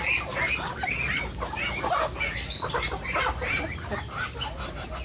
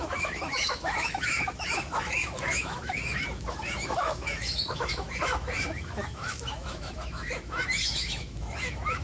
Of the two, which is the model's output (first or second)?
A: second